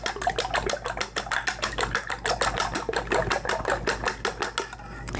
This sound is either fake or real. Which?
real